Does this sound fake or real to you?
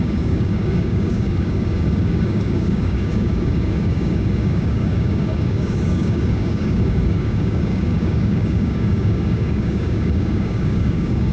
fake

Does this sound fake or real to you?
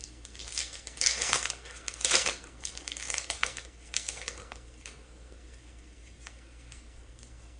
fake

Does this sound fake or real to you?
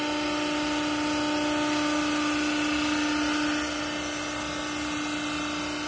real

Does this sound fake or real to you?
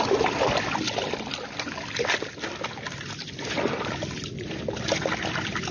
real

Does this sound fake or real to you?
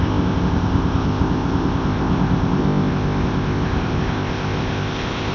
fake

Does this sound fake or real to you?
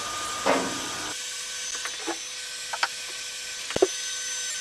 real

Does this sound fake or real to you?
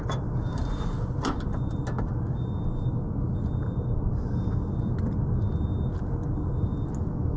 real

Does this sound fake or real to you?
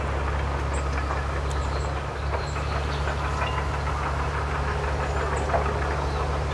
real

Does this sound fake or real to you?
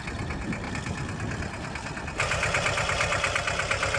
real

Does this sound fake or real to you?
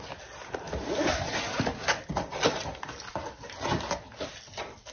real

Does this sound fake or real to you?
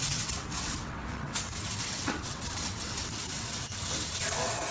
fake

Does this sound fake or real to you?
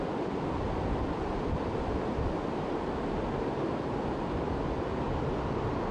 real